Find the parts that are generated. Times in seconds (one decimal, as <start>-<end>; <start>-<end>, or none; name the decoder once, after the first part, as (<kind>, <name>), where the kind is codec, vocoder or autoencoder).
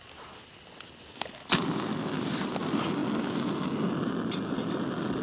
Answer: none